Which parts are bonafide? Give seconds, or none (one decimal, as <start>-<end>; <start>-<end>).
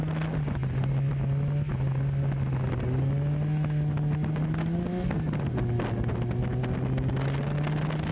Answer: 0.0-8.1